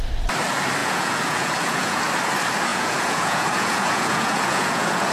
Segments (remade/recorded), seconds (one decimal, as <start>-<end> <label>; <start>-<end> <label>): 0.0-0.8 recorded; 0.8-2.0 remade; 2.0-2.7 recorded; 2.7-5.1 remade